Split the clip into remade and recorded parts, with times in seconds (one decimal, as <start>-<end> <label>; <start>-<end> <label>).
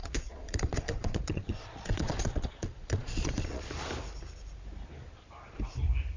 0.0-3.7 remade; 3.7-6.2 recorded